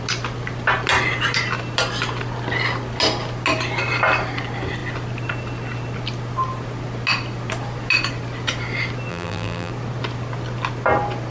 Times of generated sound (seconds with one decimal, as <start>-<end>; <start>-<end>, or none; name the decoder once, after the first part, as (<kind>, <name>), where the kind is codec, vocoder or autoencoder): 9.1-9.7 (vocoder, BigVGAN v2)